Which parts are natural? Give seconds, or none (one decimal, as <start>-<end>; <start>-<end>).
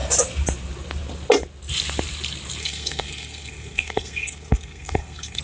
0.0-2.6